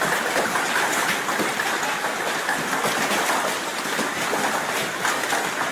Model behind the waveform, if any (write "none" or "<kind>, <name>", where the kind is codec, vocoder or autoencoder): none